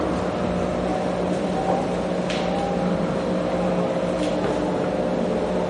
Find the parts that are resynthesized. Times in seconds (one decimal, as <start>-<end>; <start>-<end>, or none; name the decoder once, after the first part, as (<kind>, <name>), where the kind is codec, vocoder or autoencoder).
none